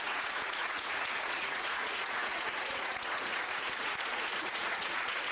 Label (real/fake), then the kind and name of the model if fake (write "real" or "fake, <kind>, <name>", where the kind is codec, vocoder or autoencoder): fake, vocoder, Vocos